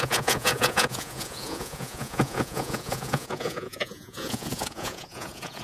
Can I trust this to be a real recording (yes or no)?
no